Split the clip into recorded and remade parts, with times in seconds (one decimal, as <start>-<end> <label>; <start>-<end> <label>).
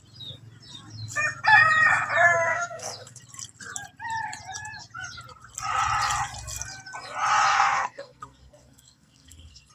0.0-2.5 recorded; 2.5-3.2 remade; 3.2-7.5 recorded; 7.5-9.7 remade